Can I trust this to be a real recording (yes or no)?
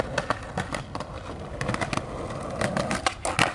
yes